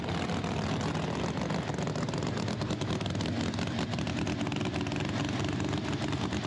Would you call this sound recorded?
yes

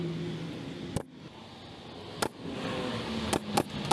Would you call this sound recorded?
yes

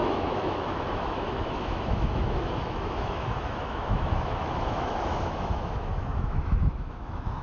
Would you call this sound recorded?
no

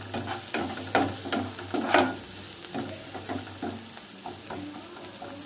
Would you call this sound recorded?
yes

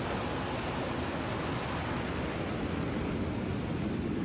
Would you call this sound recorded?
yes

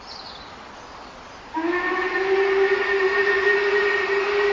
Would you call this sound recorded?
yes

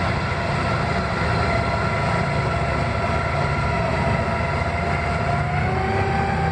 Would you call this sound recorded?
yes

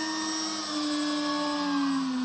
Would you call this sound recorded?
yes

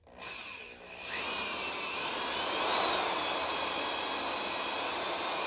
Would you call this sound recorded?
yes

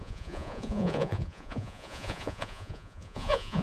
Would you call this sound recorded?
no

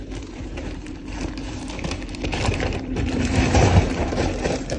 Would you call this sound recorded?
no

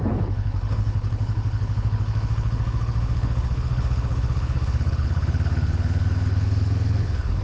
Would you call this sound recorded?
no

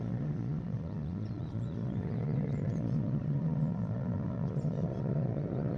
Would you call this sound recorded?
no